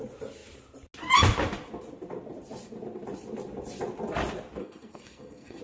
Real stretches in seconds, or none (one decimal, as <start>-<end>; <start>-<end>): 0.0-4.6